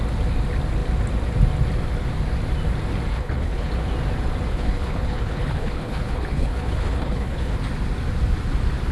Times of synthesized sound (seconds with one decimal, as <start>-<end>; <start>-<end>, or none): 3.1-3.7; 4.5-7.6